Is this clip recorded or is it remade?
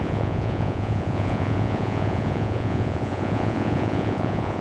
remade